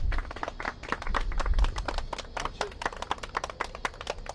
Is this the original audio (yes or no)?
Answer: yes